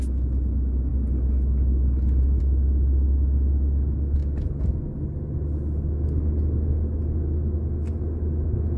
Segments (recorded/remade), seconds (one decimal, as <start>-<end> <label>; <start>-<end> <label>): 0.0-8.8 recorded